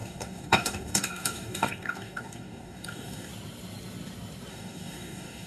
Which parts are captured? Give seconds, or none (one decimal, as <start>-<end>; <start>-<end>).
3.3-4.5